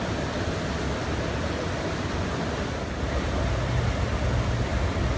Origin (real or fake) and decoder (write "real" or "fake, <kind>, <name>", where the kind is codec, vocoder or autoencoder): real